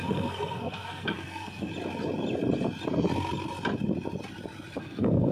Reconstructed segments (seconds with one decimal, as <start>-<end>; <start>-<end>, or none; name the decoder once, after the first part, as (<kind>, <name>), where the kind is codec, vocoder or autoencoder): 0.0-1.7 (codec, SNAC); 4.8-5.3